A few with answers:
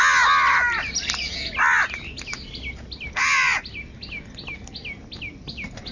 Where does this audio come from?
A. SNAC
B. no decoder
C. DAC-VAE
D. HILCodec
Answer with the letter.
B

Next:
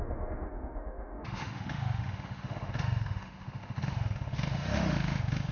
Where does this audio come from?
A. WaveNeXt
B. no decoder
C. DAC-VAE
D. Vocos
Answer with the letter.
C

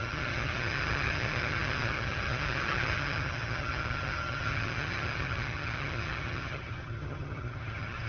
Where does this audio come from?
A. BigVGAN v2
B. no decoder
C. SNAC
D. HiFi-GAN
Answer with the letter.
D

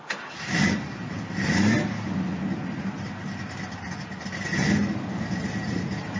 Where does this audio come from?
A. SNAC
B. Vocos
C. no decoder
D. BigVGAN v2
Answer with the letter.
C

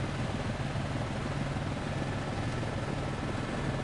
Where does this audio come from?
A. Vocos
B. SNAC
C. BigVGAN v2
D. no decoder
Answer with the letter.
D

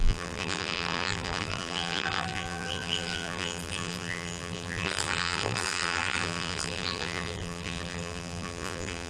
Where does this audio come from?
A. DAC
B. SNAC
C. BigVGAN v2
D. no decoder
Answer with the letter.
C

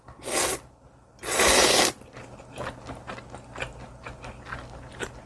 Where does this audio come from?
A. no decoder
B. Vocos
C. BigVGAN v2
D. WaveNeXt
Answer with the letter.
A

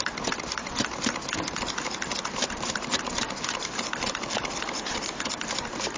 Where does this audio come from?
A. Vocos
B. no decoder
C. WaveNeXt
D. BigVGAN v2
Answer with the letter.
B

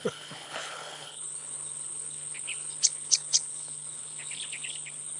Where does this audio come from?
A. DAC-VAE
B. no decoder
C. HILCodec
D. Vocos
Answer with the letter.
C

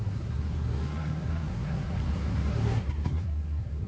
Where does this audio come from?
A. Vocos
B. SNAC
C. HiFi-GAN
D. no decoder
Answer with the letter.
B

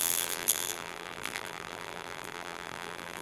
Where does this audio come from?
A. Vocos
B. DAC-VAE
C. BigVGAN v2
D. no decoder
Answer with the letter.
C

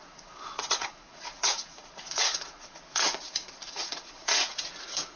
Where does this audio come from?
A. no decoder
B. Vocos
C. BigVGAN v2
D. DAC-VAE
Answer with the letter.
B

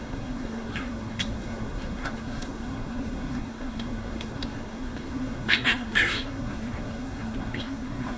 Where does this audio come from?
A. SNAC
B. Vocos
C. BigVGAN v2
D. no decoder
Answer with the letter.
A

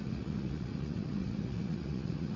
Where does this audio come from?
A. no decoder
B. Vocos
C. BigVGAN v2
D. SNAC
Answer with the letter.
B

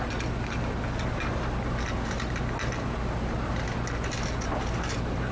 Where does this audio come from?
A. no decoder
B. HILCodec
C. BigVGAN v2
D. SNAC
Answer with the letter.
A